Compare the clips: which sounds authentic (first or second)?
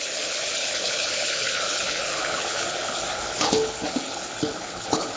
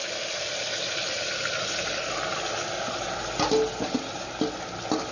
second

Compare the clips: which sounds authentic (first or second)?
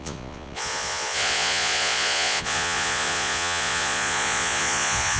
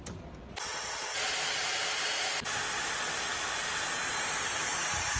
second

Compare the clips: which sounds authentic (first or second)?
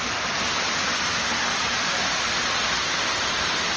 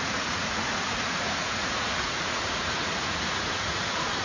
first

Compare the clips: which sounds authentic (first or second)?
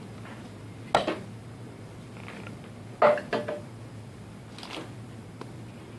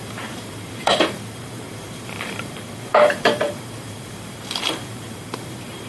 first